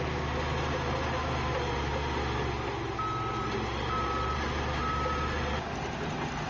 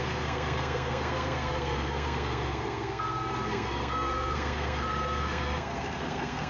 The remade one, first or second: second